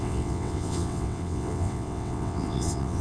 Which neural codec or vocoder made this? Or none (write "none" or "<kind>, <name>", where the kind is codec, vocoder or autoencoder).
vocoder, WaveNeXt